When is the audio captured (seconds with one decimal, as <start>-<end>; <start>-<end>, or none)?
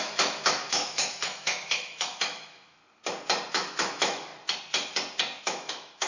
2.8-3.5; 4.3-5.4